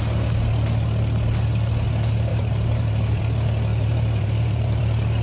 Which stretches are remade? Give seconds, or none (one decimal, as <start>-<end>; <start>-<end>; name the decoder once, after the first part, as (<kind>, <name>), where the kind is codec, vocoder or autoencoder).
2.3-3.2 (vocoder, BigVGAN v2); 3.7-4.8